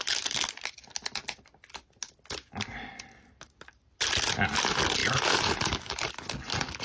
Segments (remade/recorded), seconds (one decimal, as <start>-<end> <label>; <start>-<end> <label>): 0.0-5.0 recorded; 5.0-6.1 remade; 6.1-6.8 recorded